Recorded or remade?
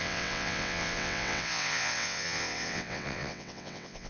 remade